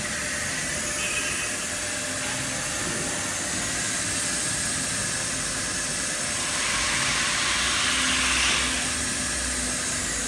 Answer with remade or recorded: recorded